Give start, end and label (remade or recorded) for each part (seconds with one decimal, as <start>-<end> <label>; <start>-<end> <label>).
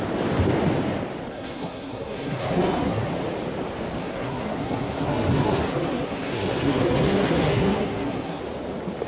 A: 0.0-1.3 recorded; 1.3-3.1 remade; 3.1-4.0 recorded; 4.0-8.4 remade; 8.4-9.1 recorded